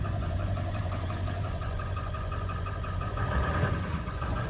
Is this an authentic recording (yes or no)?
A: no